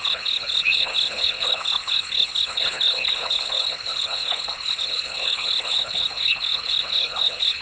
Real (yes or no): no